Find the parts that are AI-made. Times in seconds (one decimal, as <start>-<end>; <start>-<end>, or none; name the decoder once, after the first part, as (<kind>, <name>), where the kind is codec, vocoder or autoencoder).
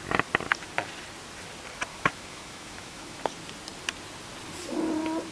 1.9-3.2 (autoencoder, DAC-VAE)